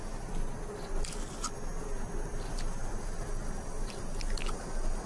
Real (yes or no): yes